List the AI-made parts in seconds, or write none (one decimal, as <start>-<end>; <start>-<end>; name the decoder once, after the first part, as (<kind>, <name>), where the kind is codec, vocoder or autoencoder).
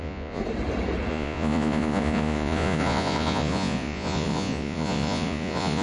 0.0-0.4 (vocoder, Vocos); 1.1-5.8